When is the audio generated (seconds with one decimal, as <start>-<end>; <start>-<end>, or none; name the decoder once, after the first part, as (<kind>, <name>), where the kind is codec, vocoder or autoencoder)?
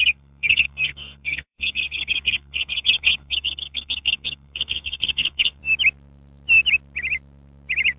0.0-5.6 (codec, SNAC)